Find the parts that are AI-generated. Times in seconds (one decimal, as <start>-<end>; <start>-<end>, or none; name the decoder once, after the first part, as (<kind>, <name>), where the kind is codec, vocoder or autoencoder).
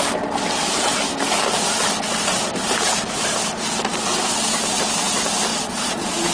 5.5-6.3 (vocoder, Vocos)